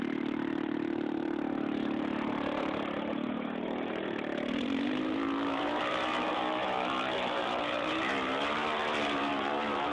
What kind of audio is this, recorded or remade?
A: remade